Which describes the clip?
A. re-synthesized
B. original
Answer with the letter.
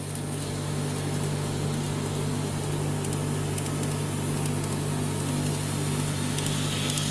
B